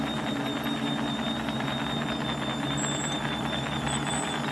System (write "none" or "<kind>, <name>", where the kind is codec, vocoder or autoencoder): none